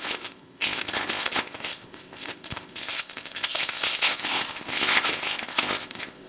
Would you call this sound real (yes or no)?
no